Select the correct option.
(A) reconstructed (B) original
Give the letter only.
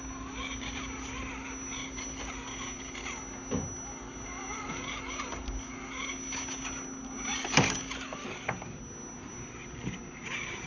B